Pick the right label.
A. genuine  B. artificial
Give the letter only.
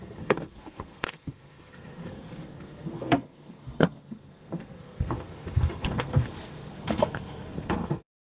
B